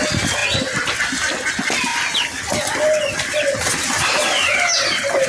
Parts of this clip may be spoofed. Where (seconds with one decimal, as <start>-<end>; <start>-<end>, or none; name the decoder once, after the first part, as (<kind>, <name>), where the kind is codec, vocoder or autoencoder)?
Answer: none